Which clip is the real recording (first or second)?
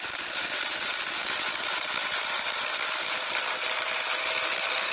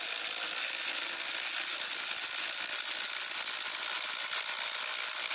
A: second